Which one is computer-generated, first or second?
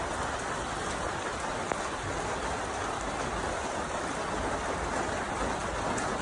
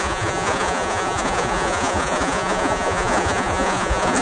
second